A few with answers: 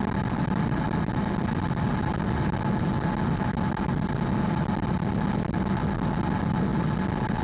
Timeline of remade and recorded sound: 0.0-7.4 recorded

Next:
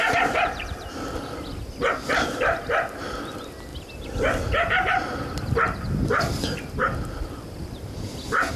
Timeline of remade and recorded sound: 0.0-8.6 recorded

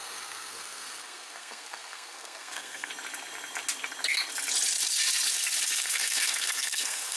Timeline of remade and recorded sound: 0.0-2.9 remade; 2.9-5.7 recorded; 5.7-7.2 remade